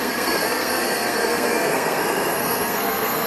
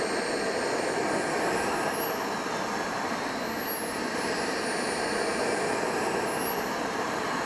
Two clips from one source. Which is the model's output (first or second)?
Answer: first